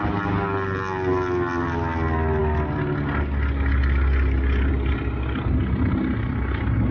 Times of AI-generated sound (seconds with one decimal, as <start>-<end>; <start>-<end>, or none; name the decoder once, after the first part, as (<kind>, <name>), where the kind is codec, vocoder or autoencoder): none